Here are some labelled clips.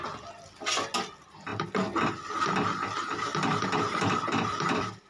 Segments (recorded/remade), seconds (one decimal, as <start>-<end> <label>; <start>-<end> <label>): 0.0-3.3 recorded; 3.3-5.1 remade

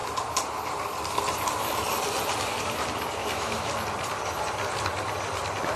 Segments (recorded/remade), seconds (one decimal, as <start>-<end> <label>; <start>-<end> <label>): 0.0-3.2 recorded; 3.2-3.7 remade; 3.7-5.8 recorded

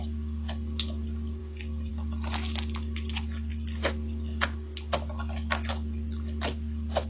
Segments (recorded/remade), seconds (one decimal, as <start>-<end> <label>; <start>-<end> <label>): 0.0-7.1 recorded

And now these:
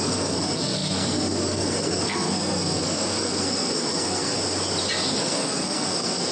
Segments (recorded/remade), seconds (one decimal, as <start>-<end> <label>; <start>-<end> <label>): 0.0-4.4 remade; 4.4-5.2 recorded; 5.2-6.3 remade

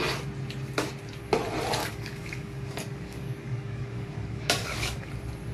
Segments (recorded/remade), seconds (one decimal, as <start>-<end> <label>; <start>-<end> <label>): 0.0-1.8 recorded; 1.8-5.1 remade; 5.1-5.5 recorded

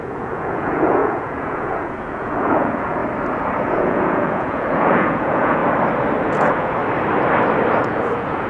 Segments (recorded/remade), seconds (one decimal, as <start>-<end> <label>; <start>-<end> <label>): 0.0-3.0 remade; 3.0-3.6 recorded; 3.6-5.6 remade; 5.6-6.2 recorded; 6.2-6.8 remade; 6.8-7.8 recorded; 7.8-8.5 remade